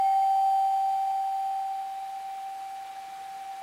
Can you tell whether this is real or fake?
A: real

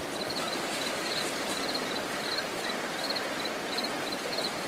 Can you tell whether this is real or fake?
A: fake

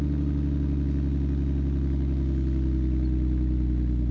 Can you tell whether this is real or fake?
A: real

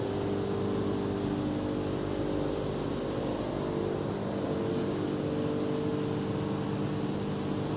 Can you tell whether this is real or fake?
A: real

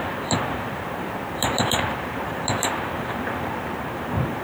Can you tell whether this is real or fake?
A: fake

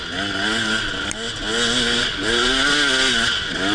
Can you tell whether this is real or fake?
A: real